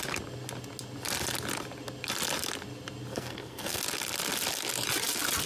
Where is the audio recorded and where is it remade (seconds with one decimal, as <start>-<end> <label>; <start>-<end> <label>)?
0.0-3.1 recorded; 3.1-3.8 remade; 3.8-5.5 recorded